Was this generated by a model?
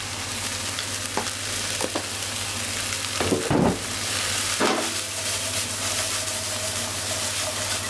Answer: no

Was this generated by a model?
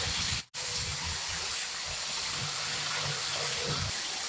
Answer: no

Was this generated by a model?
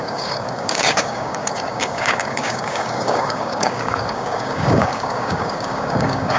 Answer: yes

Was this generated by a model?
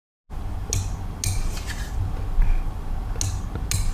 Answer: no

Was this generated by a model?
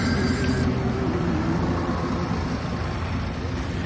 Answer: no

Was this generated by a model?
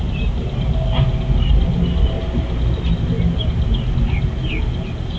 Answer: no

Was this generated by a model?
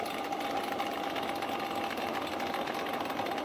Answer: no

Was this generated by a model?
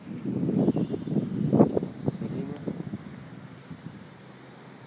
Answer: no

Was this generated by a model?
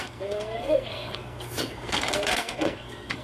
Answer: yes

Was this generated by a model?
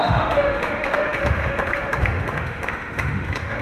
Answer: yes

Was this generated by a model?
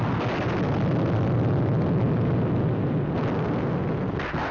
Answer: no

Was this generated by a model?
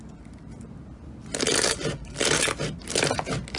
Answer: no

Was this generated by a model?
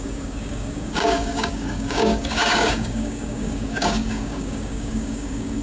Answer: yes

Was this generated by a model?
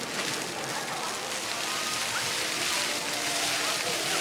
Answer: no